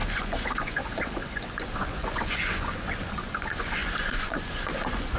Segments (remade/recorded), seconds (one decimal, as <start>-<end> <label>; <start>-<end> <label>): 0.0-5.2 remade